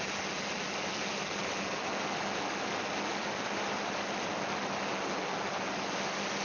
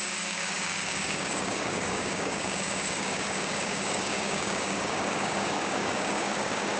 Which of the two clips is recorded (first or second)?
first